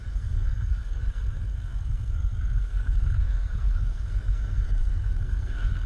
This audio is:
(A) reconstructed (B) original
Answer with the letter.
A